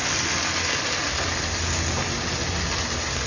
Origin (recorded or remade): recorded